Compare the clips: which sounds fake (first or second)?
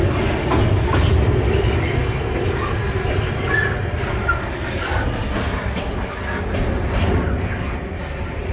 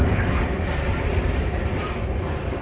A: second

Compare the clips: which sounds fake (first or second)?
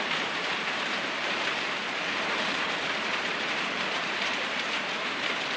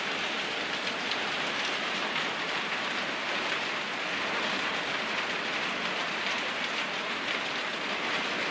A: first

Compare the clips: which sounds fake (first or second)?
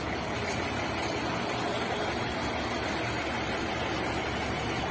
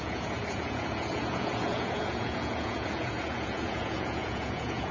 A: second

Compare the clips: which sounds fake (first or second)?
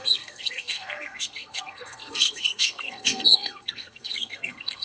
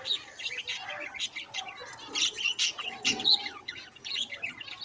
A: first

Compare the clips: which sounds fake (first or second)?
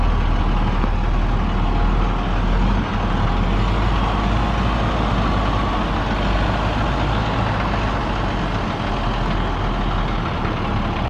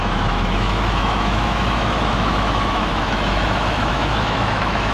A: second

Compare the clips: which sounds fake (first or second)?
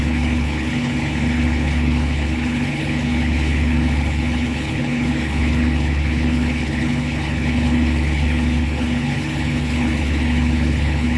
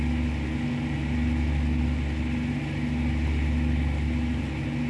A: first